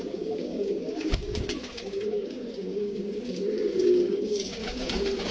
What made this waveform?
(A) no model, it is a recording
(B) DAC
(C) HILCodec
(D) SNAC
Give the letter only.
B